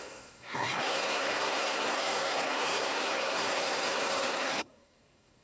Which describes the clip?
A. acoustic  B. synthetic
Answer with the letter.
B